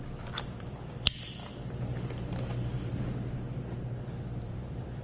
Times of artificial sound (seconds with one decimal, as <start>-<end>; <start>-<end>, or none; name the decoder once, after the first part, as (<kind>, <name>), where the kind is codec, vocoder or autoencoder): 0.0-1.4 (vocoder, BigVGAN v2); 4.0-5.0